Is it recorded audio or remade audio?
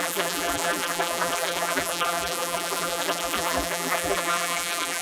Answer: remade